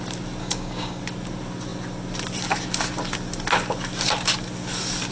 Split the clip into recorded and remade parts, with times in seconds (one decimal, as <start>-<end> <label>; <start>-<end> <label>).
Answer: 0.0-0.4 recorded; 0.4-1.0 remade; 1.0-5.1 recorded